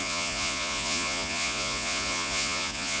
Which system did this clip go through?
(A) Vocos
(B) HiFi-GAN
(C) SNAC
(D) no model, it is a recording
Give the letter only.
A